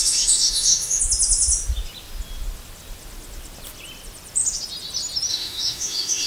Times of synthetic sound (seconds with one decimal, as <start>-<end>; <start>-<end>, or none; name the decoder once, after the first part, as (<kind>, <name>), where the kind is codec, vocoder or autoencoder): 0.0-1.0 (autoencoder, DAC-VAE); 5.3-6.3